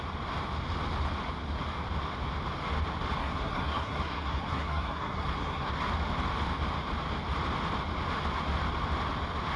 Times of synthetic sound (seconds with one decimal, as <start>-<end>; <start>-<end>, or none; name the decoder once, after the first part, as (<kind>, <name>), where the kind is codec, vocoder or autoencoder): 3.2-5.7 (codec, SNAC)